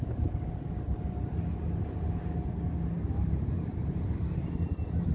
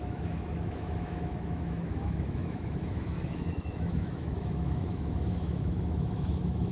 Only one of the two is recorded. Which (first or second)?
first